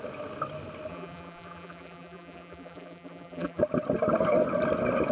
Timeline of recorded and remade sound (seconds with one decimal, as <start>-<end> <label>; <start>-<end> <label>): 0.0-0.9 recorded; 0.9-3.6 remade; 3.6-5.1 recorded